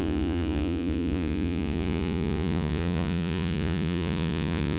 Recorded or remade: remade